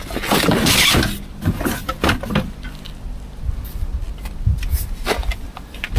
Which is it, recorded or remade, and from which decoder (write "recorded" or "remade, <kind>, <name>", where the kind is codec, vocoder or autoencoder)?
recorded